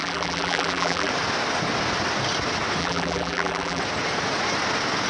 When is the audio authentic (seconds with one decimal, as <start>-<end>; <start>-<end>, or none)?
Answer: 1.1-2.8; 3.8-5.1